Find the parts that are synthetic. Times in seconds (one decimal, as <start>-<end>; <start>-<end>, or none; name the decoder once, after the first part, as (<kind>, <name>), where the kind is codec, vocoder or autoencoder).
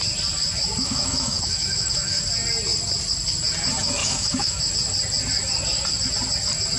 0.8-2.2 (autoencoder, DAC-VAE); 4.0-4.7